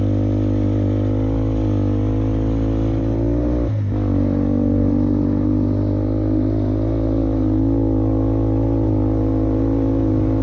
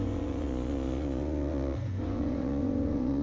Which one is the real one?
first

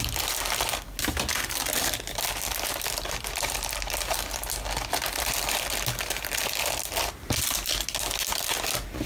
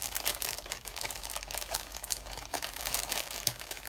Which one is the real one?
first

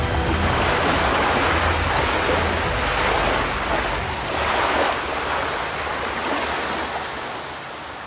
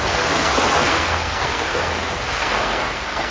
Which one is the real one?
first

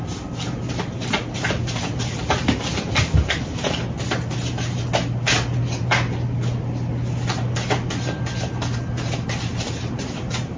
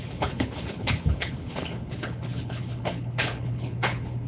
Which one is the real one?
first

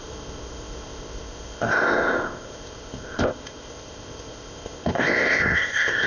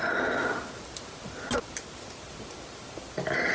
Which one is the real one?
second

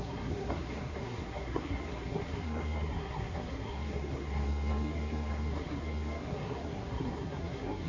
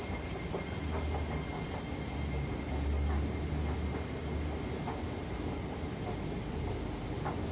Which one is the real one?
second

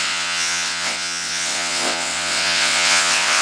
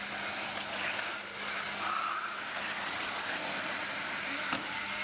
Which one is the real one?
second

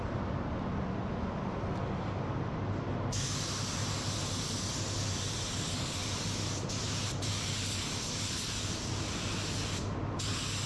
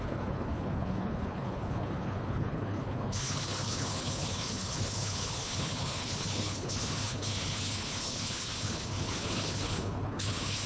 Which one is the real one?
first